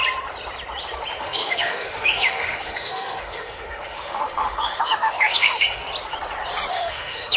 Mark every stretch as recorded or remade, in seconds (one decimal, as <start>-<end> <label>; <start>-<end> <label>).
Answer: 0.0-1.2 recorded; 1.2-5.8 remade; 5.8-6.7 recorded; 6.7-7.4 remade